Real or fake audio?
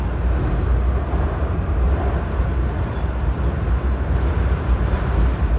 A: real